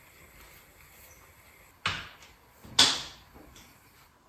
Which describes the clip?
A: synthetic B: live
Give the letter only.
B